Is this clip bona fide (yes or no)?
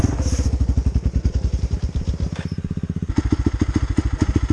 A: yes